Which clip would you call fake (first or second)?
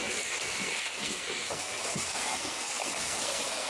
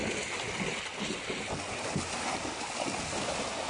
first